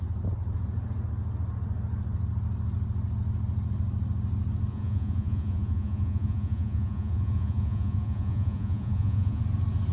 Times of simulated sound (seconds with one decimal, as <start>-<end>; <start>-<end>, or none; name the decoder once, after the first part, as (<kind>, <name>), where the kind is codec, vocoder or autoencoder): 4.7-9.4 (vocoder, Vocos)